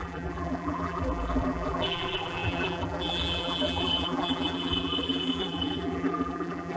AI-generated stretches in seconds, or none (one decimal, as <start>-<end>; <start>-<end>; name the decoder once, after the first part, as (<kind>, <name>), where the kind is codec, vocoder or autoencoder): 0.0-6.8 (vocoder, BigVGAN v2)